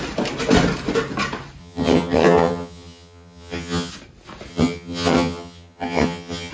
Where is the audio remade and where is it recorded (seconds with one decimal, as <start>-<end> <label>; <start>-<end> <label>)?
0.0-1.6 recorded; 1.6-3.9 remade; 3.9-4.5 recorded; 4.5-6.5 remade